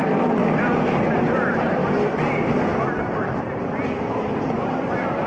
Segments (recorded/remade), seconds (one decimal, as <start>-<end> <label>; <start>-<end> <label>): 0.0-1.8 remade; 1.8-4.1 recorded; 4.1-5.3 remade